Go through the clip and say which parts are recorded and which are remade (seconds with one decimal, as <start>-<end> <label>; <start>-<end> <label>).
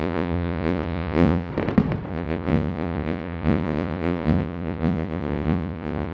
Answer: 0.0-1.5 remade; 1.5-2.1 recorded; 2.1-6.1 remade